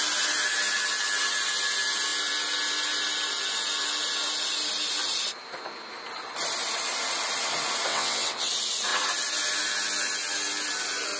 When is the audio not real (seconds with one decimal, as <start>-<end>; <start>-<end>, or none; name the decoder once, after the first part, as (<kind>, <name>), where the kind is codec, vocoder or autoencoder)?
7.9-8.5 (vocoder, WaveNeXt)